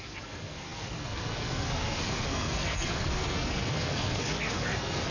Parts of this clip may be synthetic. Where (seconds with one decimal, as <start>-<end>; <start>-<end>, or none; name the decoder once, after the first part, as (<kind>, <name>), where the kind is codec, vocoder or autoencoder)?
0.0-5.1 (codec, SNAC)